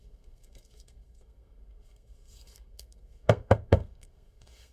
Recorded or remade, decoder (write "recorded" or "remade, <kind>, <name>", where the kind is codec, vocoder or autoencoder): remade, codec, SNAC